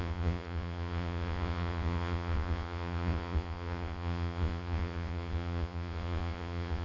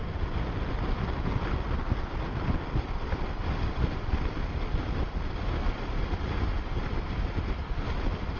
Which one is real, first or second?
second